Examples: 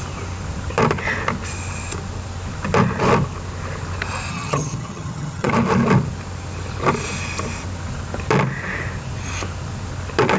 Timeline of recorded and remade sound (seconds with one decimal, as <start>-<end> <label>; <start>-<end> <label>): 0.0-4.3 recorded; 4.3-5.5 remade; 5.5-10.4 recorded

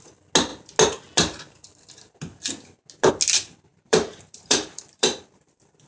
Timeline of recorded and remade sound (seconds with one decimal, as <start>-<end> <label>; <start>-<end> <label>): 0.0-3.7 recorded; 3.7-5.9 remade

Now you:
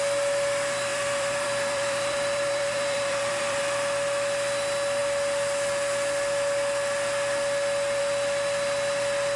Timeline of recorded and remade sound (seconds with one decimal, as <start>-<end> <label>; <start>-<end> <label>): 0.0-0.9 recorded; 0.9-3.6 remade; 3.6-9.4 recorded

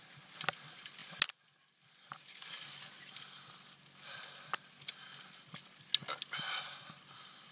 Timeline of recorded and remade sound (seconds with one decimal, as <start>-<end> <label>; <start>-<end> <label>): 0.0-7.5 recorded

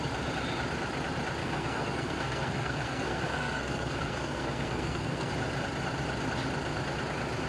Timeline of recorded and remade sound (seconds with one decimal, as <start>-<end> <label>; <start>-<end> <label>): 0.0-1.4 recorded; 1.4-5.3 remade; 5.3-7.5 recorded

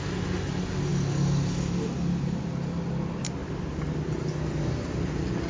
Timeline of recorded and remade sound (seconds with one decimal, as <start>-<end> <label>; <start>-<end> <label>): 0.0-3.4 recorded; 3.4-5.1 remade; 5.1-5.5 recorded

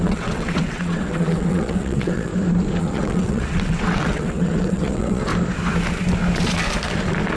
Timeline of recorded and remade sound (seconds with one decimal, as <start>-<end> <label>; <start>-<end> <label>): 0.0-2.3 remade; 2.3-2.8 recorded; 2.8-5.3 remade; 5.3-7.4 recorded

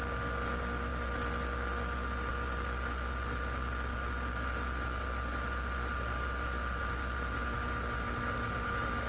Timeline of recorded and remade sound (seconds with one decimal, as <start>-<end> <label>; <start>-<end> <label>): 0.0-9.1 recorded